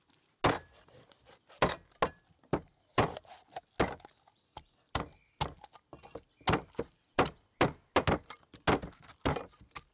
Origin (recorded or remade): recorded